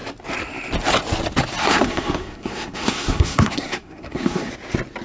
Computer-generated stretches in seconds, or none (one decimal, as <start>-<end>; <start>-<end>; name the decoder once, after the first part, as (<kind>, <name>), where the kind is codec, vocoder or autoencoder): 1.6-4.5 (codec, SNAC)